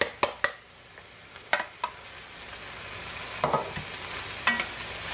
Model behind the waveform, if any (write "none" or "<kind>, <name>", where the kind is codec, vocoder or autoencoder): none